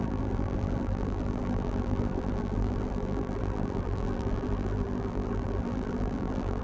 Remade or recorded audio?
remade